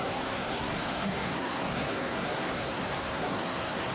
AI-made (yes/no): yes